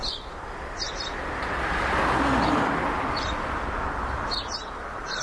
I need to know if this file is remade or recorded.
recorded